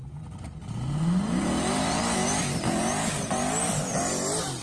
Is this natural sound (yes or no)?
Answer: yes